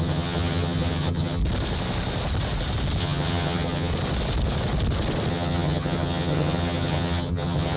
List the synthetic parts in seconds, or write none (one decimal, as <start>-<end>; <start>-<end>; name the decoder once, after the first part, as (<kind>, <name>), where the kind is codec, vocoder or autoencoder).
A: 0.0-1.4 (vocoder, HiFi-GAN); 3.0-3.9; 5.3-7.8